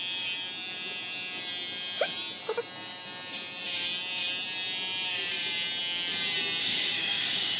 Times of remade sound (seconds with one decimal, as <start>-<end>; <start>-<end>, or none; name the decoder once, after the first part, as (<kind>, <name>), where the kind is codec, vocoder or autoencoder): 6.6-7.6 (codec, DAC)